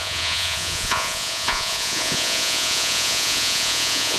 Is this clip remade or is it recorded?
remade